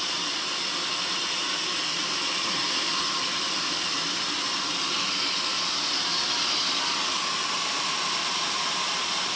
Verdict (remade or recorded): remade